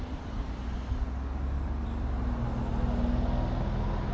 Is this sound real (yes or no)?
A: yes